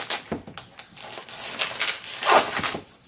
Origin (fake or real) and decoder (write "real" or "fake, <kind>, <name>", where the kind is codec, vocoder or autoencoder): real